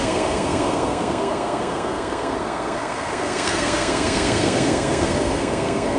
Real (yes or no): no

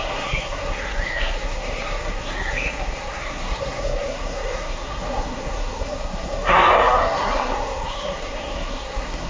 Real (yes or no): no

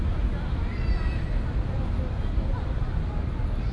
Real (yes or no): yes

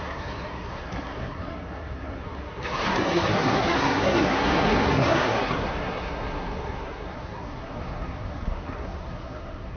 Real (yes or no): no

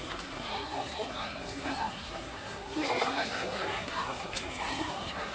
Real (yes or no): no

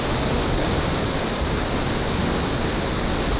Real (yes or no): yes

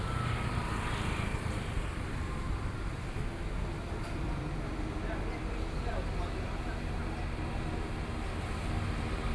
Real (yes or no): yes